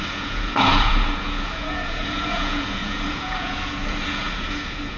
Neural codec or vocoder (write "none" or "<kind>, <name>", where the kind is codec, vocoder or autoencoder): vocoder, Vocos